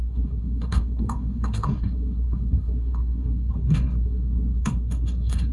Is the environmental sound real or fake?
fake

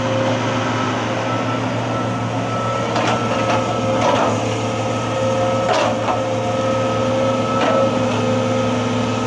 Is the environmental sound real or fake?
real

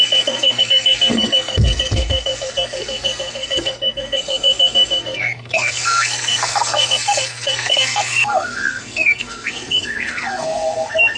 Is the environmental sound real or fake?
fake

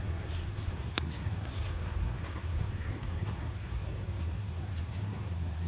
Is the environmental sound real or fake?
fake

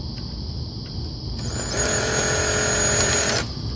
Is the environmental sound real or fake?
real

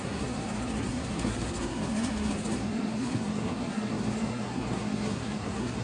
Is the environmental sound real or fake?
fake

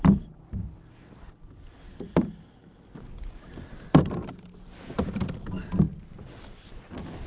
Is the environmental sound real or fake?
real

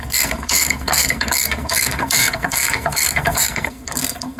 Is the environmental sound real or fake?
fake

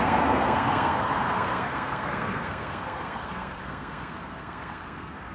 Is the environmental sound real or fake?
fake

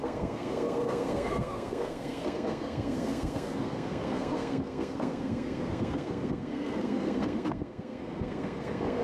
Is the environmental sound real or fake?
fake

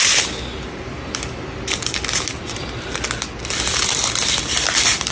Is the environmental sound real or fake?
real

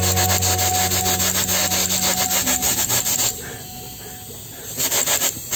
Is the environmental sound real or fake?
real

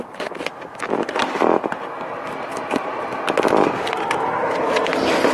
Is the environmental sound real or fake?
real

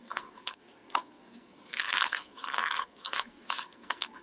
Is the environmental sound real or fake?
fake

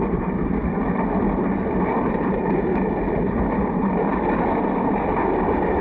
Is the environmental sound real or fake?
real